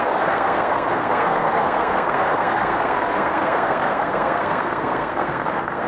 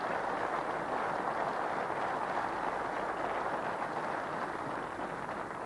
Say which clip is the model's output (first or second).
first